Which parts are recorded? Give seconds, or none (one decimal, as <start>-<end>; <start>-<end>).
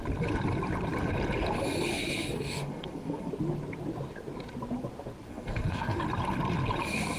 0.0-1.9; 3.3-5.3; 6.0-7.2